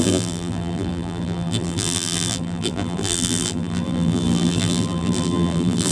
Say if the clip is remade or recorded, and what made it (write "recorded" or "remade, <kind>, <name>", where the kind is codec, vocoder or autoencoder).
remade, vocoder, BigVGAN v2